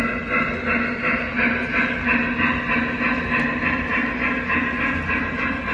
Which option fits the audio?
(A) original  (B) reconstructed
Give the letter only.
A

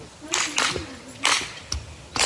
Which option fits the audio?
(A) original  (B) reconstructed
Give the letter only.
A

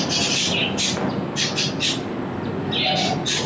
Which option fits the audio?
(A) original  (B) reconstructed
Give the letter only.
A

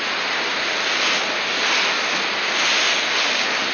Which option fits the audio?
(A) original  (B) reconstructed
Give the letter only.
A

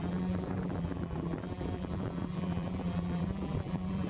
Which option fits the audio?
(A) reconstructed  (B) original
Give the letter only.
A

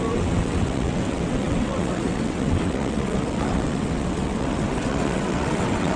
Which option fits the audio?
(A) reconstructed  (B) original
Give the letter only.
A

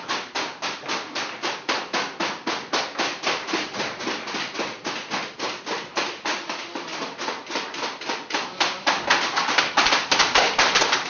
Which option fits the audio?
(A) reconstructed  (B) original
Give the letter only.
B